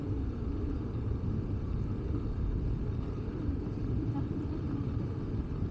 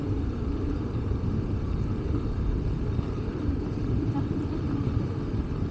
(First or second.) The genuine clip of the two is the first